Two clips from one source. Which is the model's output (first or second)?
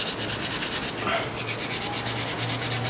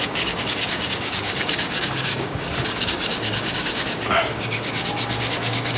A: second